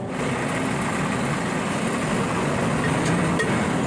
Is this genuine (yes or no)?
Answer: yes